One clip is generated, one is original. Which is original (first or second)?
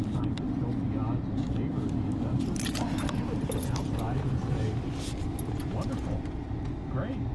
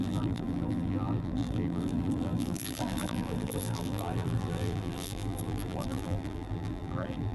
first